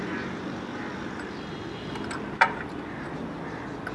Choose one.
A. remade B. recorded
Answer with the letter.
B